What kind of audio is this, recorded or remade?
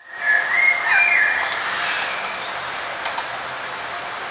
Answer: recorded